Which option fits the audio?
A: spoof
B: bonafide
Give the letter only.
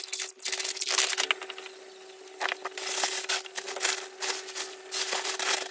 B